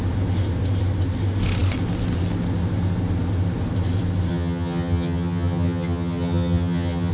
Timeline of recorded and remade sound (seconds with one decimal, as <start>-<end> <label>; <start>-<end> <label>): 0.0-4.3 recorded; 4.3-7.1 remade